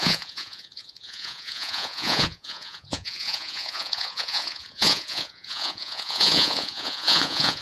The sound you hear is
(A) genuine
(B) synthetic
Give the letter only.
B